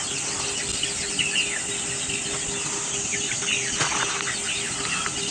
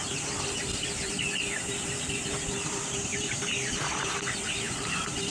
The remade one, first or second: second